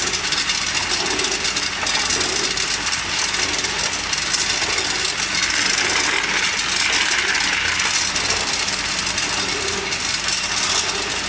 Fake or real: real